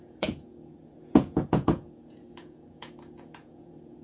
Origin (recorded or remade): remade